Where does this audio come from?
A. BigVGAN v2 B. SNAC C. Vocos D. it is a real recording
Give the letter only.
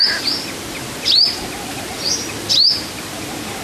D